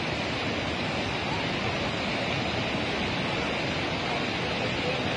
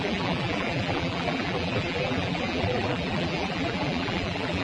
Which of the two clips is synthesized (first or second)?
second